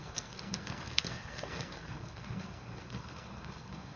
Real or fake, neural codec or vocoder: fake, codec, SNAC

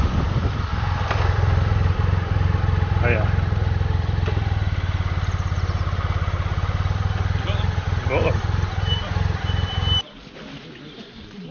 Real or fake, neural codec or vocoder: real